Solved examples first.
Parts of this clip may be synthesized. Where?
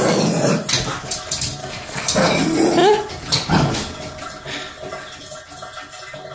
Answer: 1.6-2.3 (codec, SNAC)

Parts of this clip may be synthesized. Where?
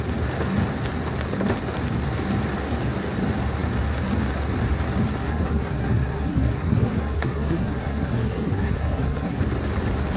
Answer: 5.2-9.4 (codec, SNAC)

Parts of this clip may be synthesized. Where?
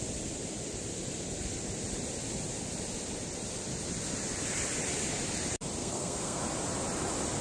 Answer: 5.8-6.4 (codec, SNAC)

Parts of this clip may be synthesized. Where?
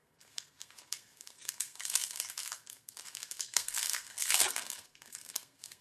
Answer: 0.0-5.8 (codec, SNAC)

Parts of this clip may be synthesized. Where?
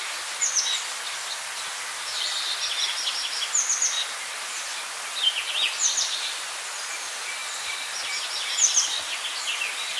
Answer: none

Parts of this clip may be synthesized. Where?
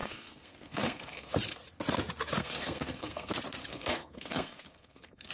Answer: 0.0-1.3 (codec, SNAC); 2.4-3.3; 3.7-5.3